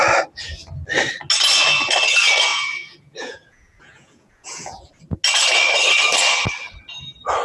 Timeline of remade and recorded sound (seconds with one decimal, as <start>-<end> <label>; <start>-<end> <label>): 0.0-2.5 recorded; 2.5-4.9 remade; 4.9-7.4 recorded